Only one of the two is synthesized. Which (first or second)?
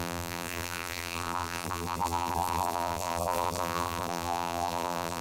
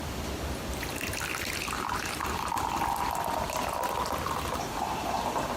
first